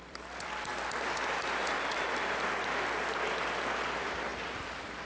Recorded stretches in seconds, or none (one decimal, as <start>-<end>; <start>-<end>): 0.7-3.8